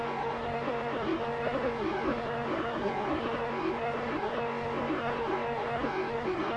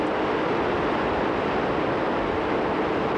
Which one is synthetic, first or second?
first